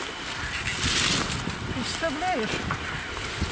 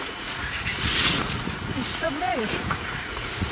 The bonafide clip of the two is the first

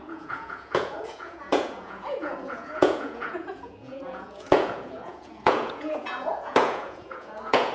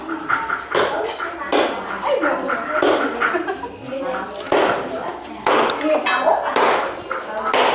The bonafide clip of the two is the second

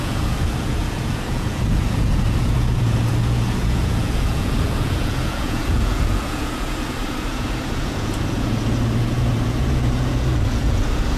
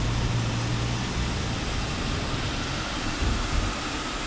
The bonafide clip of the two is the second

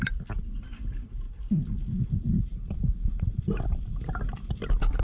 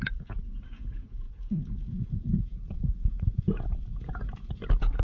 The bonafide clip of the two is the first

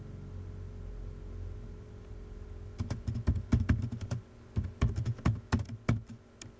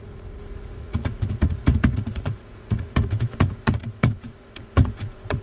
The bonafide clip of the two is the first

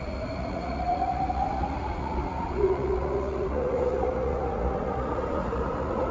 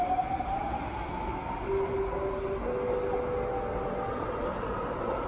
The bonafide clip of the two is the second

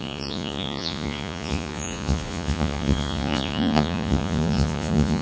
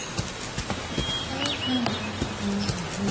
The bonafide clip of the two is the second